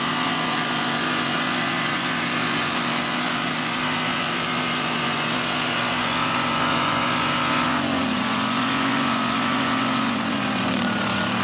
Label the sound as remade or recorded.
remade